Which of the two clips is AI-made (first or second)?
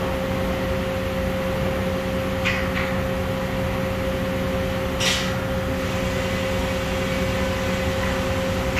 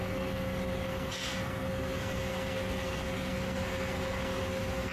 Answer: second